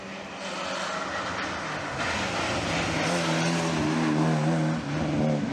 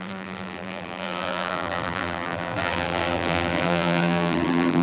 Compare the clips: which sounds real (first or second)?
first